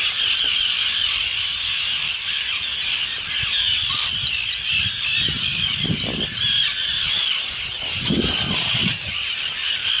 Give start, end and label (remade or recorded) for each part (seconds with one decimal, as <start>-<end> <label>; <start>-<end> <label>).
0.0-1.3 remade; 1.3-2.1 recorded; 2.1-10.0 remade